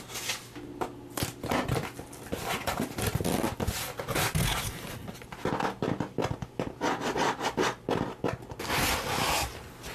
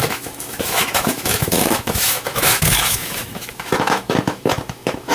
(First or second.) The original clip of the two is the first